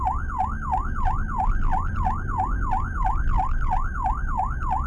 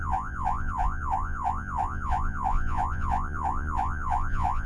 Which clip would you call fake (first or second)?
second